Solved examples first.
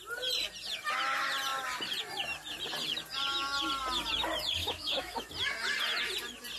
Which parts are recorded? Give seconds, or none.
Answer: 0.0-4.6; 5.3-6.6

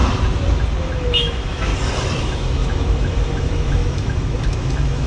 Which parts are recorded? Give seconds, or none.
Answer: 0.0-0.8; 1.7-2.2

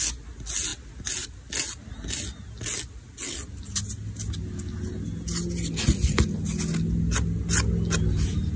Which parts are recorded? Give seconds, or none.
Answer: 0.0-8.6

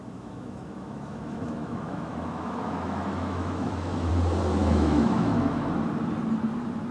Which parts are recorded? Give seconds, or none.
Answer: 4.1-4.6; 5.7-6.9

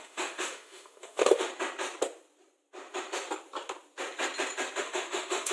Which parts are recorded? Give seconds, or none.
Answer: 1.5-4.8

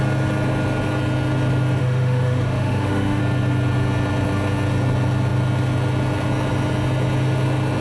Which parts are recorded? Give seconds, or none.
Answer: 0.0-1.8; 3.2-7.8